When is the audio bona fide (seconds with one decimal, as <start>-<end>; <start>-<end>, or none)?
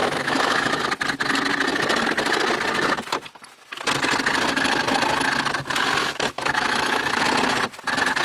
0.8-6.0; 7.2-8.2